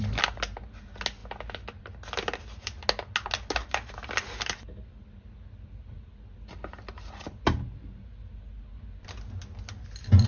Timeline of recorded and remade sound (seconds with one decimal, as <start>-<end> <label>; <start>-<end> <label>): 0.0-10.3 recorded